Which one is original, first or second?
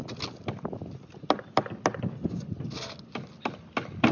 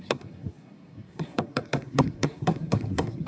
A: first